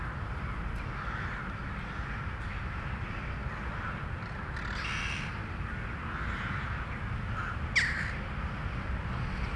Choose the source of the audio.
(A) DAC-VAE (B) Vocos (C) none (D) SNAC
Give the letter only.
C